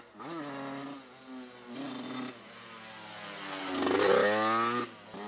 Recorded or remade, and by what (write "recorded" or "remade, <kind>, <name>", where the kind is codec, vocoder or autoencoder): recorded